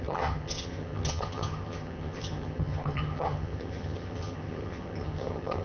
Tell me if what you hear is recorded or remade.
remade